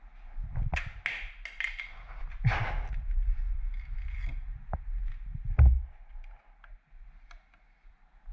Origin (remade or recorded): recorded